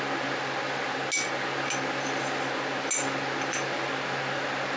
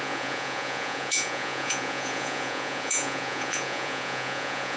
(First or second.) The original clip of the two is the first